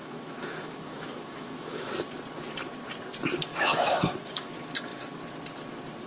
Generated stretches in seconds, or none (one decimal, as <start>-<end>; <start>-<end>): 0.0-1.9; 3.5-4.5